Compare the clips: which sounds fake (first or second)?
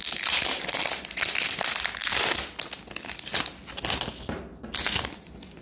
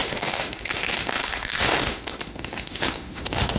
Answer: second